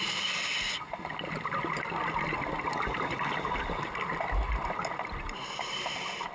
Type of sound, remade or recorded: recorded